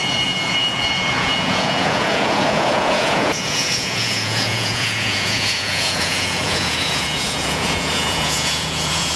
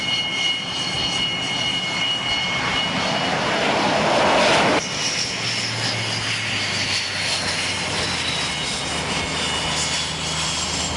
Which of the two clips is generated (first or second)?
first